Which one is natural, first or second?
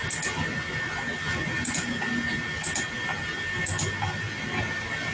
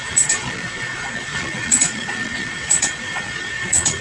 first